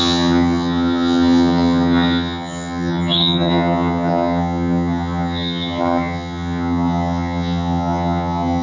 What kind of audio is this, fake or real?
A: fake